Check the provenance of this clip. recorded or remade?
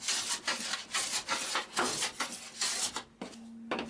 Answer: recorded